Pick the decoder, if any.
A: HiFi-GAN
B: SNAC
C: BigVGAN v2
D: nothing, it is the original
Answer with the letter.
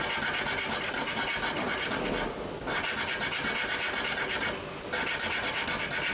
D